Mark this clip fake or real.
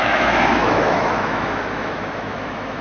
fake